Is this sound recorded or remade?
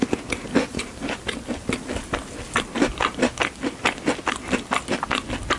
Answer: recorded